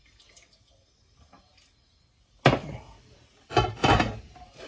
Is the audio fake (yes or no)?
no